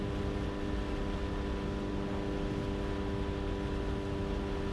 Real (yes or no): yes